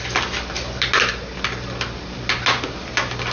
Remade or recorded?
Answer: recorded